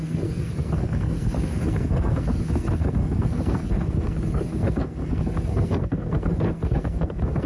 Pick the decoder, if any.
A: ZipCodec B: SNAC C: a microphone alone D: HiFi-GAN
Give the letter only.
B